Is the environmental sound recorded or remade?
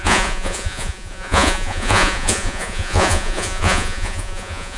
remade